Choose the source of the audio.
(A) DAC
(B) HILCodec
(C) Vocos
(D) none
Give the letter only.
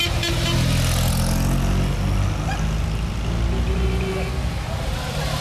D